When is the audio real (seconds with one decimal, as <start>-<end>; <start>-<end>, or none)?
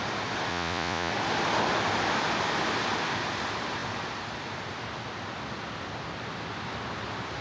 0.0-0.5; 1.1-7.4